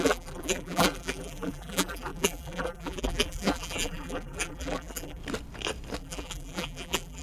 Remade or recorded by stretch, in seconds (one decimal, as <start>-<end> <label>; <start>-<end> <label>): 0.0-5.2 remade; 5.2-6.0 recorded; 6.0-7.2 remade